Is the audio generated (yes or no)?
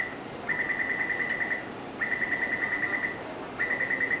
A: no